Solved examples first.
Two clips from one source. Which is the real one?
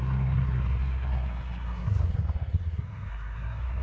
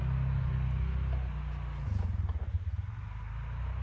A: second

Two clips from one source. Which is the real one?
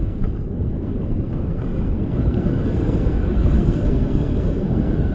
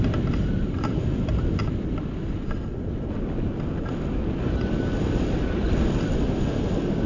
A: second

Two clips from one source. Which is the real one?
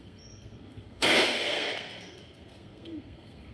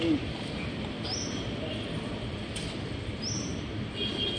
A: second